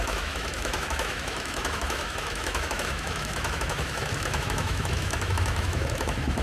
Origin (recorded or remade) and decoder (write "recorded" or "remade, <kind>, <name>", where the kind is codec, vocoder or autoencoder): remade, autoencoder, DAC-VAE